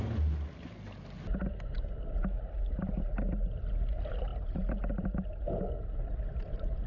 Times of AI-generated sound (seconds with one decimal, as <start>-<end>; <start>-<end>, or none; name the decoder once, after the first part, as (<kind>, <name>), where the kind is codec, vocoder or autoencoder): none